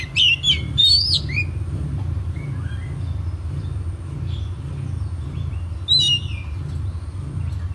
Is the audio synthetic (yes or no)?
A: no